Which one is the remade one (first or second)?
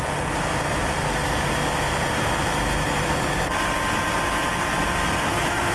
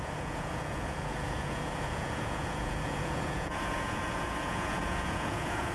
second